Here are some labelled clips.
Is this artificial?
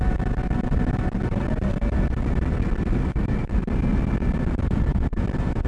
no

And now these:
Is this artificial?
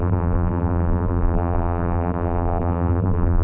yes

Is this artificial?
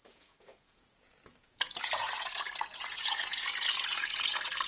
yes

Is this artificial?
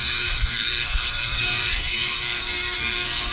yes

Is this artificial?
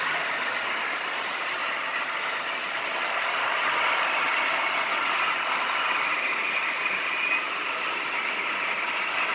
yes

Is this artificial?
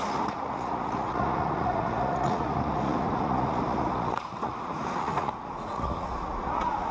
yes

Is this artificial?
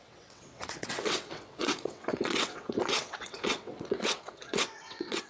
yes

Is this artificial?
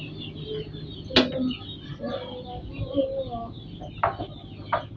no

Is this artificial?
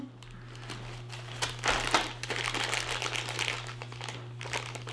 no